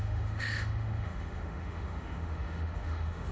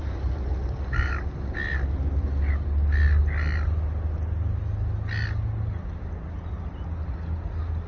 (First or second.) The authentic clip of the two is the second